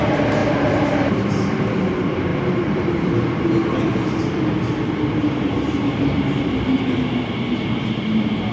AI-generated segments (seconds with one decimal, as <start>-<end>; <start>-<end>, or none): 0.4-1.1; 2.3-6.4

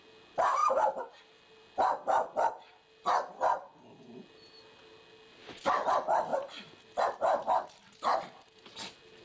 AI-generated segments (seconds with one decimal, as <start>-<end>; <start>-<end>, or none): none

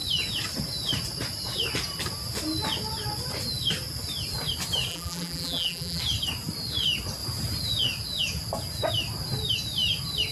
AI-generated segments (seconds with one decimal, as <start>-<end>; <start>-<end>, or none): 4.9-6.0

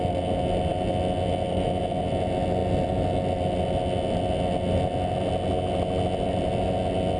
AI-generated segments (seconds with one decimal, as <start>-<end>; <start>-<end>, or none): none

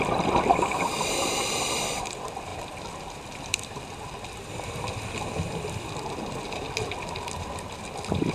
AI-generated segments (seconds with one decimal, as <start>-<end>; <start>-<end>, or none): 2.5-6.0